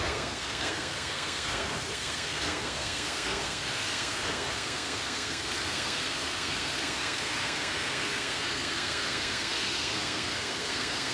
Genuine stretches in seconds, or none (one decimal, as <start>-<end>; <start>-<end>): none